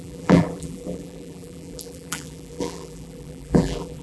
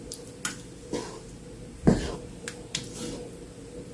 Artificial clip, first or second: first